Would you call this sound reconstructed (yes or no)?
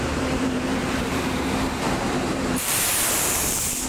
yes